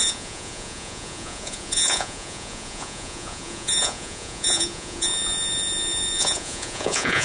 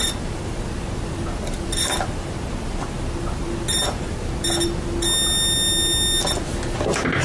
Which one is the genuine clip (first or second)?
second